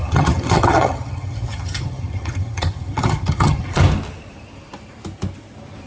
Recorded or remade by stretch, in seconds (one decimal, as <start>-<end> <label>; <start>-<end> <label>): 0.0-3.8 remade; 3.8-5.9 recorded